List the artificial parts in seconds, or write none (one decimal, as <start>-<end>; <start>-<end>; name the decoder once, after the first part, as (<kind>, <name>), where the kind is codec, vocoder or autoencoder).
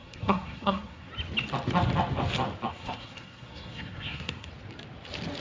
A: 0.0-1.1 (codec, SNAC); 2.7-4.5